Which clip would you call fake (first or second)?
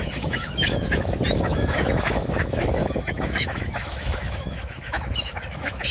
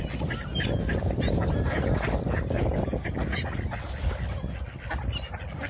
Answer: first